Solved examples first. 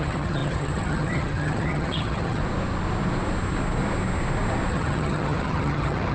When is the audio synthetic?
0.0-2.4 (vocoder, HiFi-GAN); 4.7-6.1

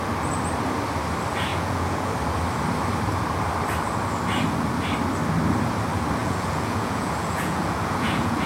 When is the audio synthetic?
1.5-2.1 (vocoder, Vocos); 6.2-8.5

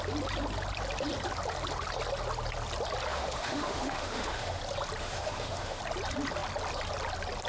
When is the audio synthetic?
3.1-4.6 (autoencoder, DAC-VAE); 5.0-5.8

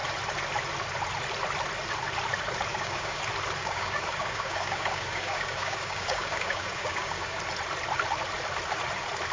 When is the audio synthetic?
2.7-3.2 (codec, DAC); 3.6-7.4

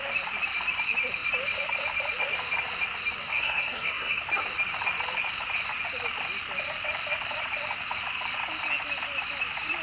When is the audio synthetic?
3.2-4.2 (codec, SNAC)